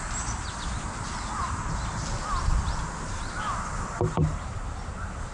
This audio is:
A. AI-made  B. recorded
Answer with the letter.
B